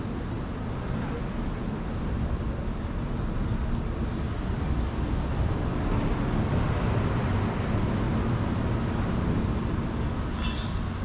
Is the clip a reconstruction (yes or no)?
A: no